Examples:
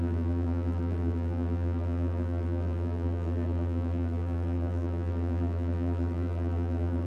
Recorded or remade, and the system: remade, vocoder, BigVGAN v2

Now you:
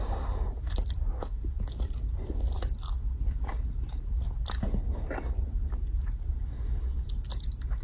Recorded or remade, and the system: recorded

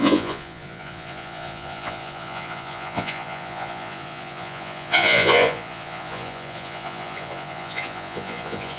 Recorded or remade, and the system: remade, vocoder, Vocos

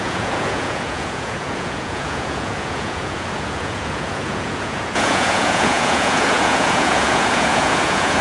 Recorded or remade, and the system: remade, vocoder, Vocos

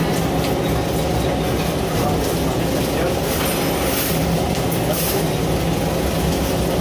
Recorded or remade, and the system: recorded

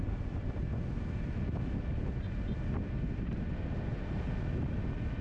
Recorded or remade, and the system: recorded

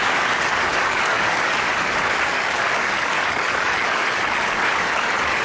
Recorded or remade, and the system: remade, codec, DAC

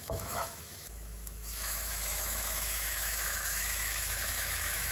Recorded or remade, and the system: remade, autoencoder, DAC-VAE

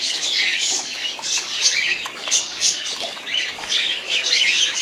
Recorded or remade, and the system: remade, codec, DAC